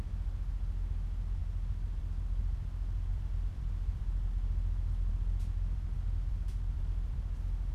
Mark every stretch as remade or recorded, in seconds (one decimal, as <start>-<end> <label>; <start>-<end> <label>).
0.0-3.1 recorded; 3.1-4.0 remade; 4.0-5.1 recorded; 5.1-6.8 remade; 6.8-7.7 recorded